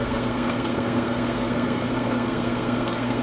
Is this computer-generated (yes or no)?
yes